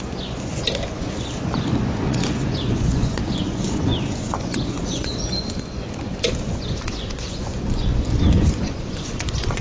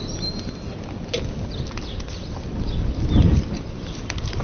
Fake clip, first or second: first